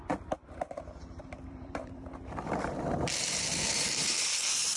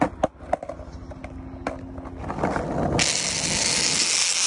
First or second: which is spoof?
first